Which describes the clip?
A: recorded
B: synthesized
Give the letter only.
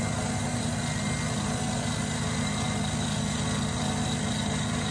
A